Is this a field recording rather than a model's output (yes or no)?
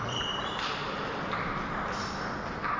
yes